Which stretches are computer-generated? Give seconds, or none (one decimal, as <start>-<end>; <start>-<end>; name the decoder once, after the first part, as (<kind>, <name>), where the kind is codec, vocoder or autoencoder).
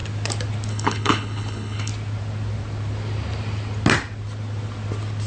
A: 0.7-1.9 (codec, HILCodec)